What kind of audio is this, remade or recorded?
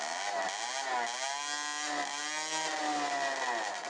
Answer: recorded